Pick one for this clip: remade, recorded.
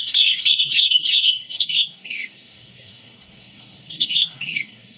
remade